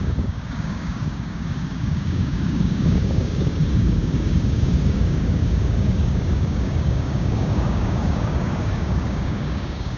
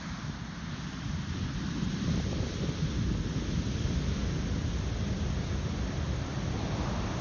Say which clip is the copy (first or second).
first